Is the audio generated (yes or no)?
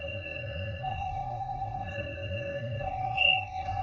yes